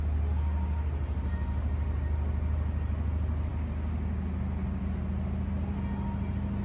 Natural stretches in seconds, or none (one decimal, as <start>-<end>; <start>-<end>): 0.0-6.6